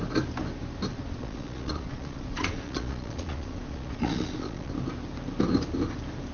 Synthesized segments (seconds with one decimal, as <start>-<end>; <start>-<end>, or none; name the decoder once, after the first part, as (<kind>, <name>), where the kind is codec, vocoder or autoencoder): 0.9-4.7 (vocoder, Vocos)